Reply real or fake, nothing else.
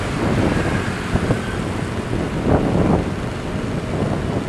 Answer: real